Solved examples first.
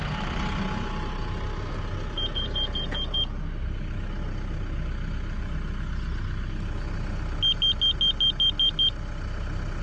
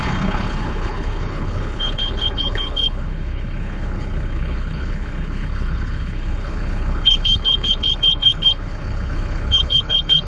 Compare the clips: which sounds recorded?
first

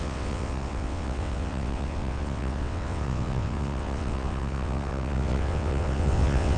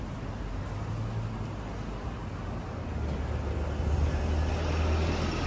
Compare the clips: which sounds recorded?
second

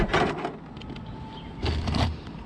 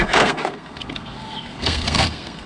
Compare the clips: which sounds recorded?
first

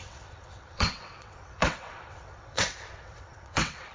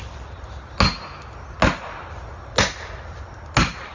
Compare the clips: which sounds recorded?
second